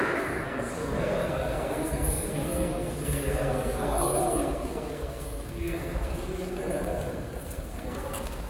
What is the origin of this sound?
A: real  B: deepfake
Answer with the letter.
B